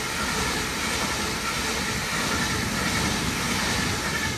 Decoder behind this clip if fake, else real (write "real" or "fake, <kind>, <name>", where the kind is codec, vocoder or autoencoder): real